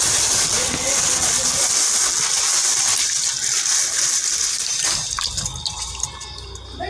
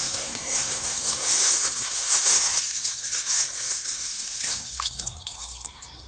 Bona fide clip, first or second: first